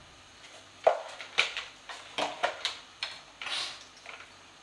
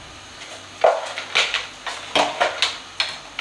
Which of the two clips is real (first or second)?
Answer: second